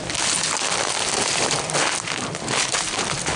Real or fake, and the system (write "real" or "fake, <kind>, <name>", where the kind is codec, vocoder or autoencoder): real